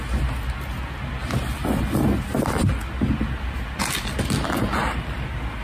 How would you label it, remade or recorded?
recorded